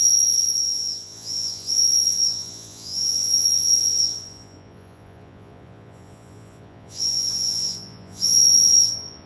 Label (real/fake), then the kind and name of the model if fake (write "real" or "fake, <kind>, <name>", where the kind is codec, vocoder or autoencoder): fake, vocoder, Vocos